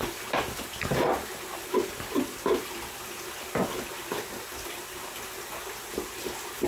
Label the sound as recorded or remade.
recorded